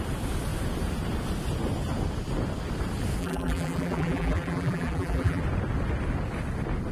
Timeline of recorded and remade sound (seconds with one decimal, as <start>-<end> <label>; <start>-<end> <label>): 0.0-3.2 recorded; 3.2-5.4 remade; 5.4-6.9 recorded